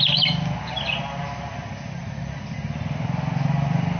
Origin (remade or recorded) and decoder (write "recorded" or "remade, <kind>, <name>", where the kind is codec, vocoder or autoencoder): recorded